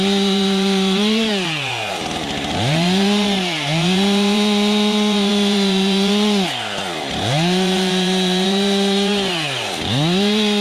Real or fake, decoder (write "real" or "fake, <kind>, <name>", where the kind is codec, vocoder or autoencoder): fake, vocoder, BigVGAN v2